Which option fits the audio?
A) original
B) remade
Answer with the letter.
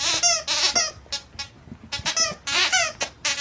A